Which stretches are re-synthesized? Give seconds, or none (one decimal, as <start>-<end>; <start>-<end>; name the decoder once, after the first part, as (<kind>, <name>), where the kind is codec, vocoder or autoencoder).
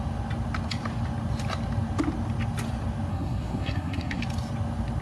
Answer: 3.1-4.2 (codec, SNAC)